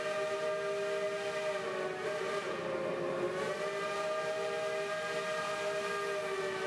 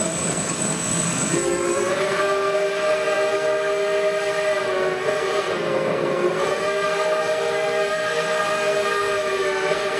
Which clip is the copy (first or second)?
second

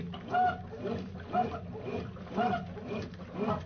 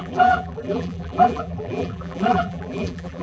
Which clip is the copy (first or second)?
second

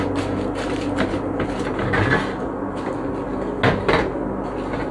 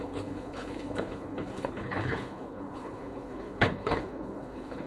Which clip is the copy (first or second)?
second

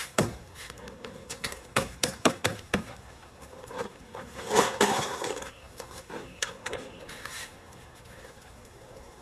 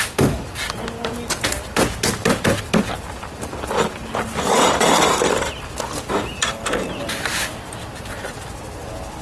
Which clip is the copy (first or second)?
first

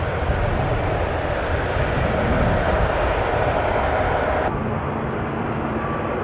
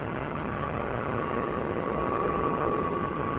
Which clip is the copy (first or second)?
second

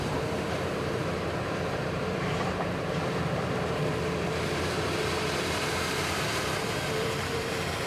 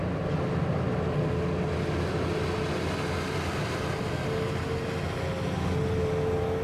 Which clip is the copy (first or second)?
first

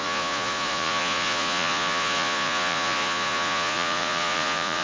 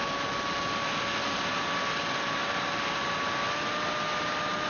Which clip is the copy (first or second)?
first